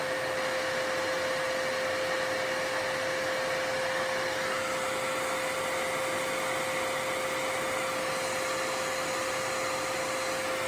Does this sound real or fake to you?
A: real